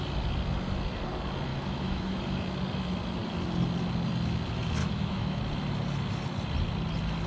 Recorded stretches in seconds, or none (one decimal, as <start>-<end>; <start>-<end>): 0.0-1.5; 2.2-4.8; 5.4-7.3